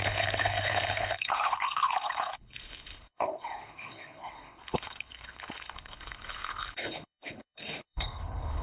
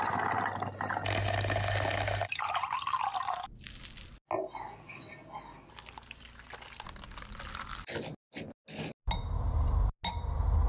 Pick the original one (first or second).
second